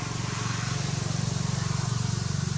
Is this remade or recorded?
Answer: recorded